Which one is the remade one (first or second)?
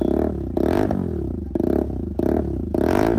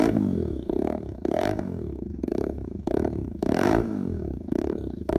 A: second